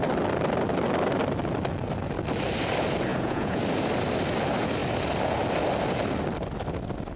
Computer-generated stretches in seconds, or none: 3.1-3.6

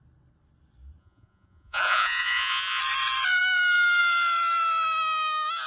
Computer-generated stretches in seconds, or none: 1.0-2.8

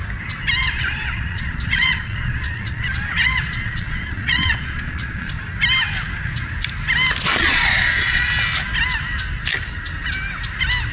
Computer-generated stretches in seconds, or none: 0.6-5.3; 7.3-8.3

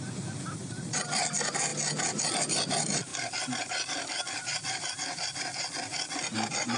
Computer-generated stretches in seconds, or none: none